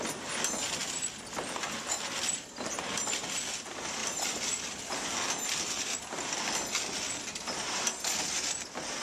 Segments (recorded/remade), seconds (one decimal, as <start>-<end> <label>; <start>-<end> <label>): 0.0-0.8 recorded; 0.8-3.1 remade; 3.1-4.0 recorded; 4.0-6.0 remade; 6.0-9.0 recorded